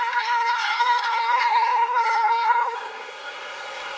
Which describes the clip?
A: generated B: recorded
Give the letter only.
A